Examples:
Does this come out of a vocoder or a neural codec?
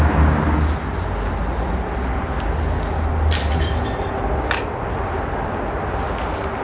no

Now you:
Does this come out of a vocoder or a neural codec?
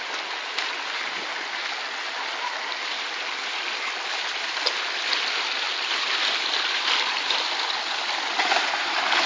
no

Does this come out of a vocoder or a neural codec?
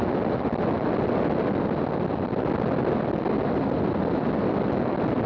no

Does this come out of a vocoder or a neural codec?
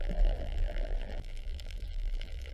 yes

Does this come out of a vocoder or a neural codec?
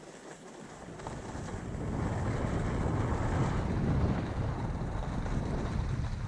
no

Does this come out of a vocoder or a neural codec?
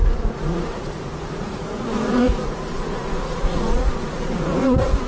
yes